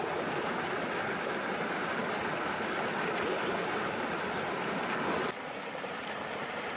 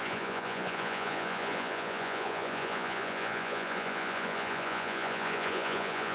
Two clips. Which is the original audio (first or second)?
first